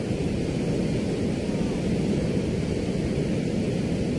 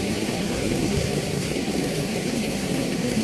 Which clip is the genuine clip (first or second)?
first